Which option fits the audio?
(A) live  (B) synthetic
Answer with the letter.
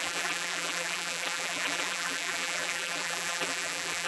B